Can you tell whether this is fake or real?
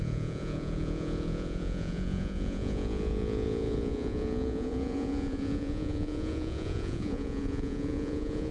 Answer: fake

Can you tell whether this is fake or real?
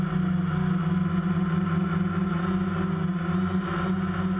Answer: real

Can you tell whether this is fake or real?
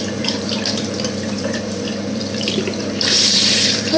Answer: fake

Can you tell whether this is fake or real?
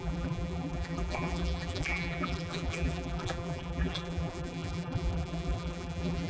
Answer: fake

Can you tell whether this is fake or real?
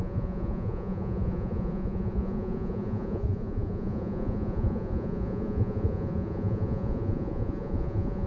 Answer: fake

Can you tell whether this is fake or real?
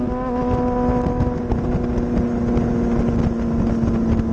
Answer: real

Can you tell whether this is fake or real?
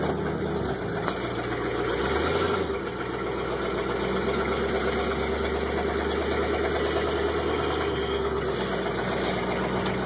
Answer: real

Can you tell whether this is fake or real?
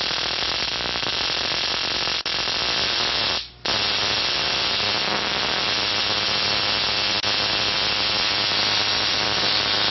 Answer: real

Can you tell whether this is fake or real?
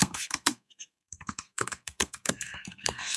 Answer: fake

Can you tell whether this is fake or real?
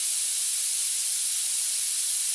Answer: real